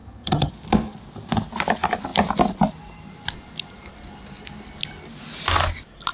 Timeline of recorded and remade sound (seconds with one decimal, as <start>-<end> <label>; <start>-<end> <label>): 0.0-0.5 remade; 0.5-6.1 recorded